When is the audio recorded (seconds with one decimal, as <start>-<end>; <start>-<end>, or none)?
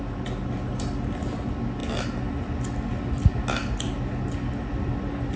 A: 0.0-5.4